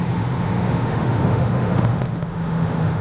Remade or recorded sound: remade